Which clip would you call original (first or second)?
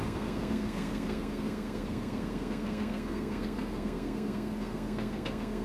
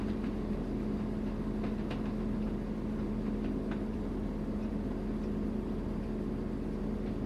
second